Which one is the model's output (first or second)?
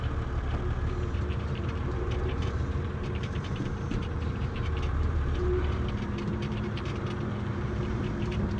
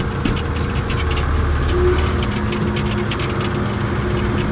first